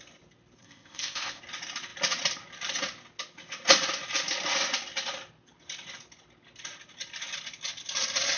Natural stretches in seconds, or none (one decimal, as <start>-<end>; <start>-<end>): 0.0-0.6; 1.4-8.4